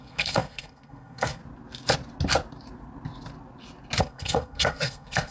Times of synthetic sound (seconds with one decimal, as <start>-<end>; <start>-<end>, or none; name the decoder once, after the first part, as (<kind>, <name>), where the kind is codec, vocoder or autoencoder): 0.0-1.4 (codec, SNAC); 4.0-5.3